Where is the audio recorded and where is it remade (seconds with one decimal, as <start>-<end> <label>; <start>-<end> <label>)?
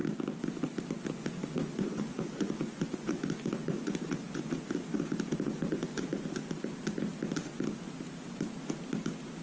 0.0-1.2 recorded; 1.2-6.4 remade; 6.4-9.4 recorded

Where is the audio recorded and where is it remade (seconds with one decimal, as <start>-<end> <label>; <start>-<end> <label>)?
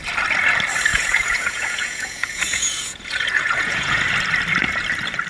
0.0-0.9 recorded; 0.9-4.0 remade; 4.0-5.3 recorded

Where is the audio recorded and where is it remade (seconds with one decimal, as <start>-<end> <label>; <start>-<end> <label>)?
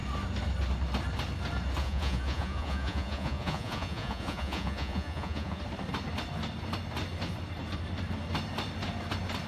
0.0-1.8 recorded; 1.8-5.6 remade; 5.6-9.5 recorded